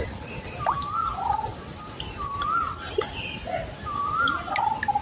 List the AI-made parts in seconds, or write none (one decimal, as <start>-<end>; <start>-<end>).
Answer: none